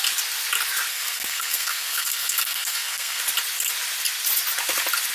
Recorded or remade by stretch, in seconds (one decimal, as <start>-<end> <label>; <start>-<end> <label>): 0.0-0.9 recorded; 0.9-3.2 remade; 3.2-5.1 recorded

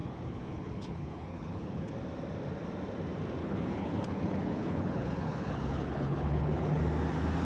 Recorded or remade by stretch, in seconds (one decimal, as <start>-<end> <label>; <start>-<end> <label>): 0.0-1.9 remade; 1.9-3.4 recorded; 3.4-6.8 remade; 6.8-7.4 recorded

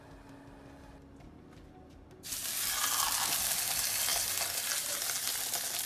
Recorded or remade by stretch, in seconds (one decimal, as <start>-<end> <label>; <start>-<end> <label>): 0.0-5.9 recorded

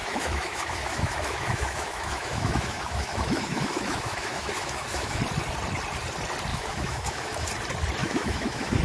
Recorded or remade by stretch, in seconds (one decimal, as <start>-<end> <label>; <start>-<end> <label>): 0.0-5.2 remade; 5.2-6.5 recorded; 6.5-7.5 remade; 7.5-8.0 recorded; 8.0-8.8 remade

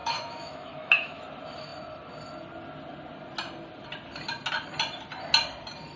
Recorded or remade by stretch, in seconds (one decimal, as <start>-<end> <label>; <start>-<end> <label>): 0.0-1.2 remade; 1.2-6.0 recorded

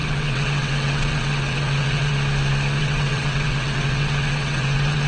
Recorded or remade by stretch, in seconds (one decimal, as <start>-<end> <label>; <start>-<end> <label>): 0.0-2.1 remade; 2.1-2.8 recorded; 2.8-5.1 remade

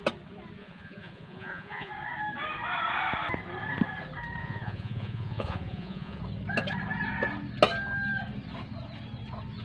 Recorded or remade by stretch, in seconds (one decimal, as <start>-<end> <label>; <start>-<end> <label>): 0.0-0.6 recorded; 0.6-1.9 remade; 1.9-4.4 recorded; 4.4-6.2 remade; 6.2-9.6 recorded

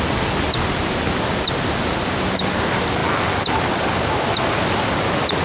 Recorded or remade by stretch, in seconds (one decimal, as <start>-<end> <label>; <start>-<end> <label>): 0.0-5.4 recorded